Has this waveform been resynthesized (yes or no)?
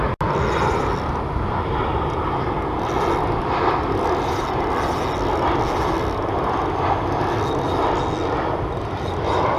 no